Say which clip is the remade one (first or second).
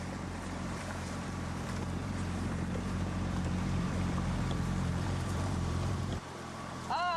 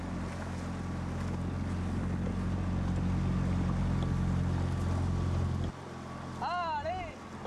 first